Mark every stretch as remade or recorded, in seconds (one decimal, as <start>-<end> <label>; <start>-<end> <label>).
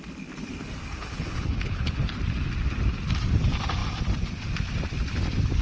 0.0-0.9 recorded; 0.9-2.2 remade; 2.2-5.6 recorded